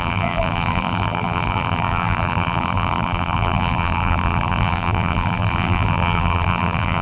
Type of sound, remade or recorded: remade